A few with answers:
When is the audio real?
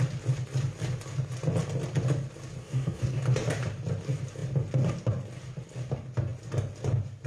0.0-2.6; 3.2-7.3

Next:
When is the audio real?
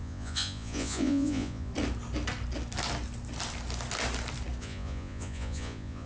1.7-4.6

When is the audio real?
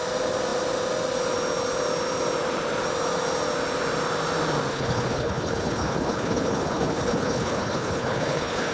0.0-4.7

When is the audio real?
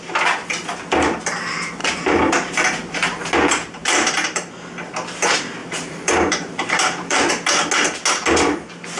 0.0-1.8; 3.3-3.8; 4.5-5.6; 7.3-9.0